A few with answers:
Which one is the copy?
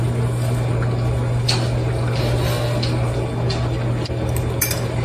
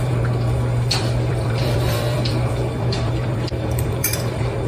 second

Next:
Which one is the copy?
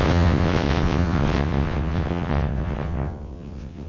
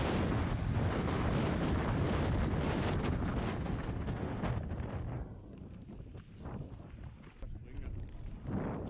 first